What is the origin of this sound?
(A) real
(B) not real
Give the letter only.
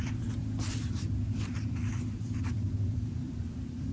B